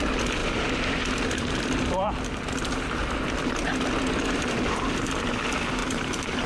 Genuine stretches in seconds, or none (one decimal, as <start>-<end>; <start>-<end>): 0.0-0.4; 2.1-3.0; 4.5-5.8

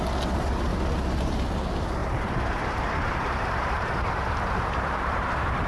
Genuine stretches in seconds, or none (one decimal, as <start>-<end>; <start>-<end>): 0.0-2.0

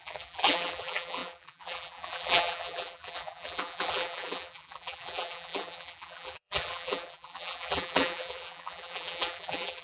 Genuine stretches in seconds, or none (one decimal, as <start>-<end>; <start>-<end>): none

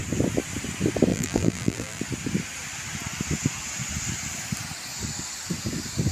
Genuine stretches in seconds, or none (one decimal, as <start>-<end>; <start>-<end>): 0.0-1.1; 2.0-6.1

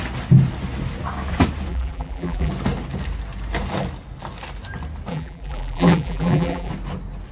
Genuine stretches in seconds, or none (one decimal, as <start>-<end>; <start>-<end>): 0.0-1.7; 2.5-5.1; 6.7-7.3

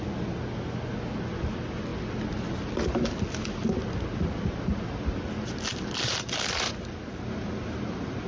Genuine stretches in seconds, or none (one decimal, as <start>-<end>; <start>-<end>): 0.0-5.7

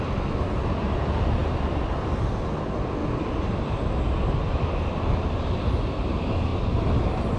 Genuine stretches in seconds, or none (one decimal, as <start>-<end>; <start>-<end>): 0.0-1.4; 2.2-3.0; 4.9-6.5; 7.0-7.4

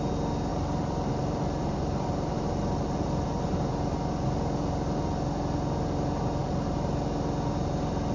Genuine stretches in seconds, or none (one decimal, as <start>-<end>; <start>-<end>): 0.0-0.5; 3.6-6.4; 6.9-8.1